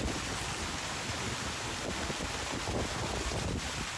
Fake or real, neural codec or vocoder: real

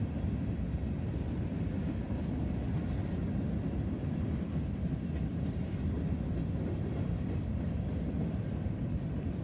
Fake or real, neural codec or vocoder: real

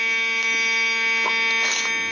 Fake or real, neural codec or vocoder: real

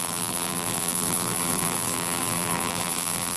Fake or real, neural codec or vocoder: fake, vocoder, BigVGAN v2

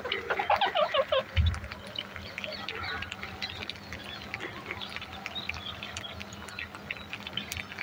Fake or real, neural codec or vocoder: real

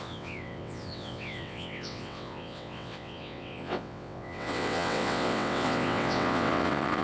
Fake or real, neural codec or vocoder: fake, vocoder, WaveNeXt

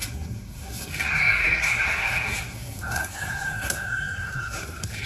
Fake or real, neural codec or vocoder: fake, codec, SNAC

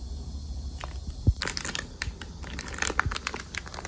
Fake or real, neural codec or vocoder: real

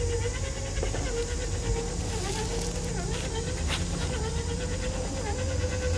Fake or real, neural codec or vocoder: real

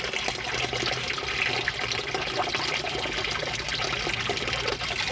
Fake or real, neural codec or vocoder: real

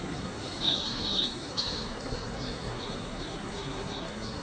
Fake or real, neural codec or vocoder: fake, codec, SNAC